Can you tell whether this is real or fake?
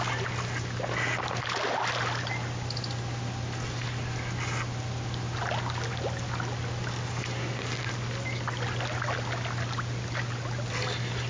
real